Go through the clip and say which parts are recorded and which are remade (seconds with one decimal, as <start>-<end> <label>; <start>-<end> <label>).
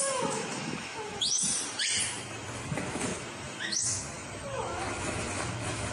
0.0-1.5 remade; 1.5-2.0 recorded; 2.0-5.9 remade